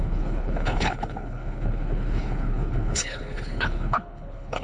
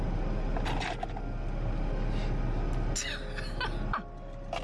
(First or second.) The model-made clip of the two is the first